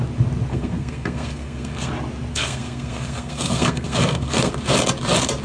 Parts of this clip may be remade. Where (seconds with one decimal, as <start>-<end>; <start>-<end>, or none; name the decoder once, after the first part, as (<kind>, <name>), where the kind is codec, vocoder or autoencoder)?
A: 0.5-1.9 (codec, SNAC); 2.3-4.5